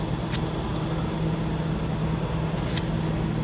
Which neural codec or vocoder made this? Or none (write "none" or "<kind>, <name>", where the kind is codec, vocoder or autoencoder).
none